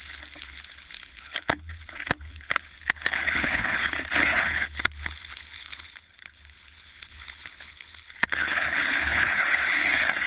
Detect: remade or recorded remade